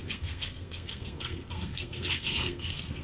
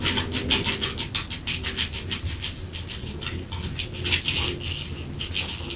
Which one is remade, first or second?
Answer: first